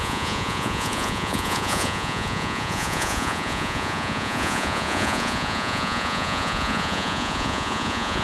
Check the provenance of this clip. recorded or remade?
remade